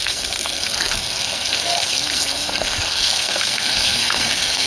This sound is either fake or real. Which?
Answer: fake